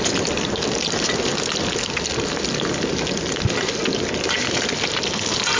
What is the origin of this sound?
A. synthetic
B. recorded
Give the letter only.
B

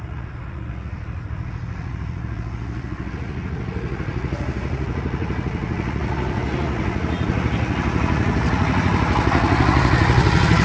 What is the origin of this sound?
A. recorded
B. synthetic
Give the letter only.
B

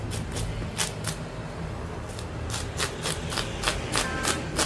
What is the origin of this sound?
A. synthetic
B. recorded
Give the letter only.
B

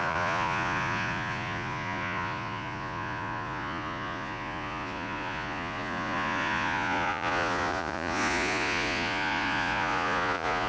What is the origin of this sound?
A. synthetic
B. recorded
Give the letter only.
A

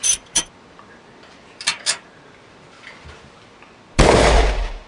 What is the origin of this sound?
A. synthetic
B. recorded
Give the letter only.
B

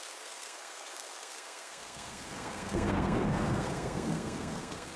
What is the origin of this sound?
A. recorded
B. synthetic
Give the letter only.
B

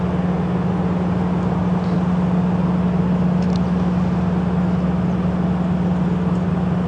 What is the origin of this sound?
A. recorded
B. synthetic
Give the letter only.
A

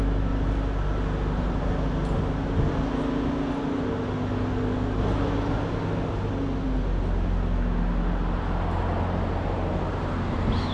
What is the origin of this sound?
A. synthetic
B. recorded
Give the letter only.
B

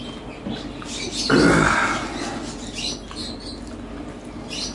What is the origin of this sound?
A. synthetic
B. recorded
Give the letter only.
B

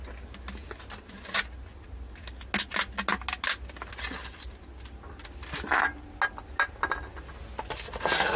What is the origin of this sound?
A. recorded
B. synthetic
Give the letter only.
A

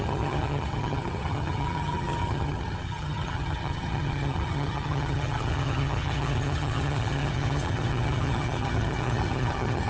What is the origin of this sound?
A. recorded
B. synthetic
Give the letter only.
B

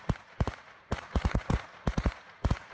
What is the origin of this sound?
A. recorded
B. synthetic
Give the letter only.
B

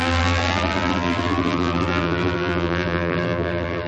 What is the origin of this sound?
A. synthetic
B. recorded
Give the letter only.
A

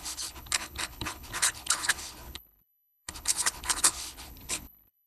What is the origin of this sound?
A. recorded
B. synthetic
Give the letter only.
B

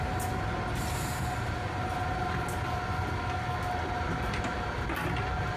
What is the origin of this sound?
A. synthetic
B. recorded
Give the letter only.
B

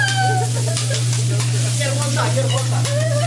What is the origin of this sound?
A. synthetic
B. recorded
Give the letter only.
B